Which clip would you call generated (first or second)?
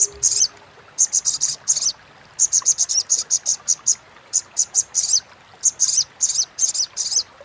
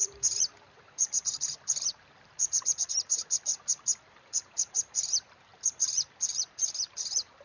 second